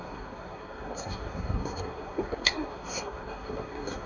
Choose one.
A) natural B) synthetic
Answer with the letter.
B